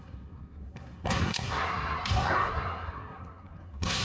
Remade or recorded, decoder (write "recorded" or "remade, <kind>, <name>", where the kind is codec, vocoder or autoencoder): remade, codec, SNAC